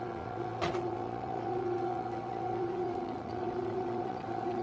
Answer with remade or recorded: remade